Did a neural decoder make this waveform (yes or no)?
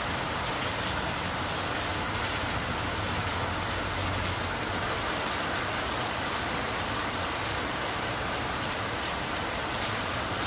no